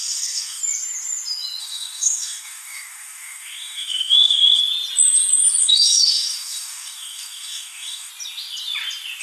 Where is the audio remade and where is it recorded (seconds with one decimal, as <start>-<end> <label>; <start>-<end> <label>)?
0.0-0.6 remade; 0.6-1.6 recorded; 1.6-4.6 remade; 4.6-5.6 recorded; 5.6-8.1 remade; 8.1-9.2 recorded